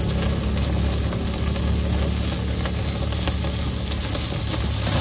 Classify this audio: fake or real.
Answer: real